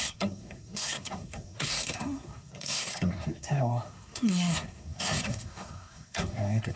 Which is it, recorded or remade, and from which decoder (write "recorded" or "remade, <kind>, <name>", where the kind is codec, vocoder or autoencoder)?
remade, codec, SNAC